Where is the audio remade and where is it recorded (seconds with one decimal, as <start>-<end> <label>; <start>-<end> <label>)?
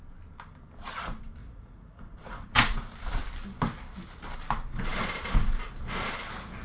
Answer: 0.0-1.4 recorded; 1.4-3.1 remade; 3.1-6.6 recorded